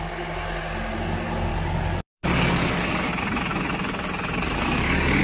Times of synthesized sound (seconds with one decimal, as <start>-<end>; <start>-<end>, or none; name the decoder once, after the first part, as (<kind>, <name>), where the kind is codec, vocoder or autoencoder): 1.5-3.1 (codec, DAC); 3.5-5.2

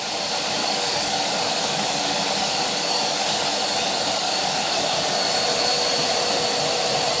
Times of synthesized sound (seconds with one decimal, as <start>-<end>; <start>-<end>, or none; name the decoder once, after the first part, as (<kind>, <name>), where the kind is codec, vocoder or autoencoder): 0.6-4.9 (codec, DAC)